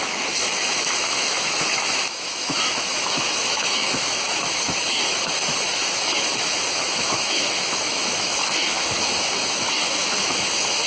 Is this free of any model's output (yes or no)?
no